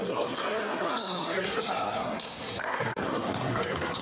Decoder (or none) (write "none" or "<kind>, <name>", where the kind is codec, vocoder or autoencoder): codec, SNAC